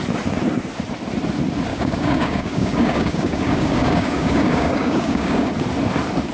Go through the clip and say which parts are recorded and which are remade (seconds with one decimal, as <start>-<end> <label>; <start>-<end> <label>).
0.0-1.7 recorded; 1.7-5.5 remade; 5.5-6.3 recorded